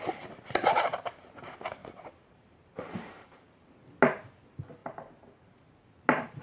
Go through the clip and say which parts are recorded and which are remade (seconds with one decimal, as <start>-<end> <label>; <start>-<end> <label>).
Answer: 0.0-1.8 recorded; 1.8-3.7 remade; 3.7-4.8 recorded; 4.8-5.7 remade; 5.7-6.4 recorded